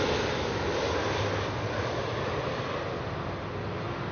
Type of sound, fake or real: real